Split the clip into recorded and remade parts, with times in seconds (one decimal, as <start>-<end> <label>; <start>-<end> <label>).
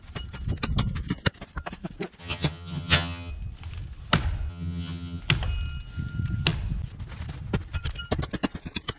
0.0-2.2 recorded; 2.2-3.3 remade; 3.3-4.5 recorded; 4.5-5.2 remade; 5.2-9.0 recorded